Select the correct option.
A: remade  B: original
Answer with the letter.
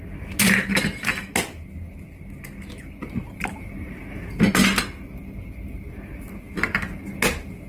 B